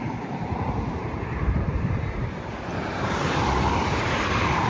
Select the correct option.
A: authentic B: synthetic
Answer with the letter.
B